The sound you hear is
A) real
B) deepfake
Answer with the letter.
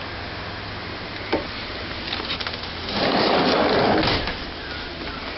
A